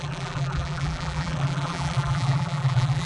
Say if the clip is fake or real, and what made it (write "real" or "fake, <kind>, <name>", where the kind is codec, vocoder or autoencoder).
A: fake, vocoder, BigVGAN v2